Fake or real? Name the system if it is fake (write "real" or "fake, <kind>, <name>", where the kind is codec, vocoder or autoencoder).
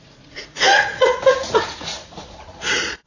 fake, vocoder, Vocos